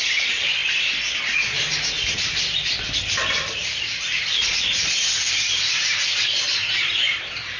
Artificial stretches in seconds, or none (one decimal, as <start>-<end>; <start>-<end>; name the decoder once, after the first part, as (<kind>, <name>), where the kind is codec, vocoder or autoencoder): 0.0-0.6 (vocoder, BigVGAN v2); 1.9-7.6